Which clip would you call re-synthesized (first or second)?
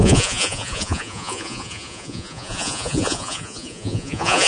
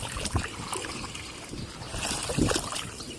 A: first